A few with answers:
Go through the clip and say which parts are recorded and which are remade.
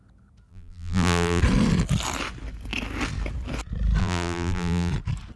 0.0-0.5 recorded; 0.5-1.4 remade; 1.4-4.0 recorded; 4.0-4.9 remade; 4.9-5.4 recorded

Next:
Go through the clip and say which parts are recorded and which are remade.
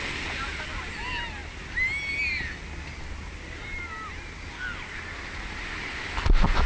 0.0-6.7 recorded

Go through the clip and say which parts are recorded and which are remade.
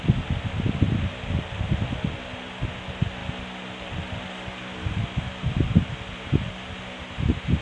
0.0-3.2 recorded; 3.2-5.0 remade; 5.0-7.6 recorded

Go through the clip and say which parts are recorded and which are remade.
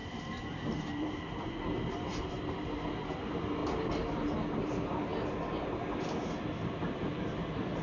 0.0-3.6 remade; 3.6-4.6 recorded; 4.6-5.1 remade; 5.1-7.1 recorded; 7.1-7.8 remade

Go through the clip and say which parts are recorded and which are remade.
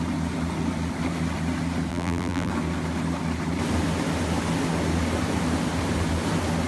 0.0-1.9 recorded; 1.9-2.5 remade; 2.5-6.7 recorded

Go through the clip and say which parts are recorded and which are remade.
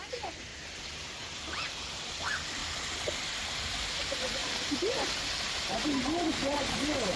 0.0-0.5 recorded; 0.5-2.1 remade; 2.1-4.4 recorded; 4.4-6.3 remade; 6.3-7.2 recorded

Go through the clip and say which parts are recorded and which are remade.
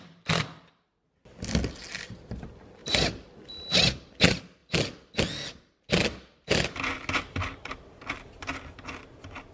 0.0-2.8 recorded; 2.8-3.5 remade; 3.5-9.5 recorded